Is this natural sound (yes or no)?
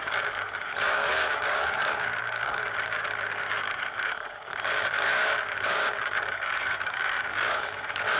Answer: no